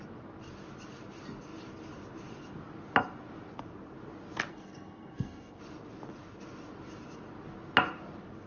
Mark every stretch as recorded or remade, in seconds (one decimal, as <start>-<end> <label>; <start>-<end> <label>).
0.0-4.5 recorded; 4.5-5.6 remade; 5.6-8.5 recorded